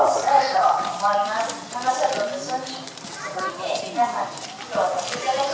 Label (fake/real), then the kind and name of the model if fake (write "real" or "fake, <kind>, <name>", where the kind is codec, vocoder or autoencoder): real